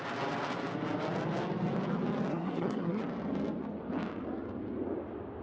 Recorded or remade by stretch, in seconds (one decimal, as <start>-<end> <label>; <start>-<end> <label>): 0.0-2.3 recorded; 2.3-3.0 remade; 3.0-5.4 recorded